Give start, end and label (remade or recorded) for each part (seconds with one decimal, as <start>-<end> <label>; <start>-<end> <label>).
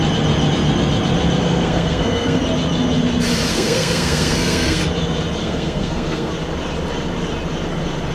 0.0-1.4 recorded; 1.4-2.4 remade; 2.4-3.5 recorded; 3.5-4.8 remade; 4.8-5.4 recorded; 5.4-6.3 remade; 6.3-8.1 recorded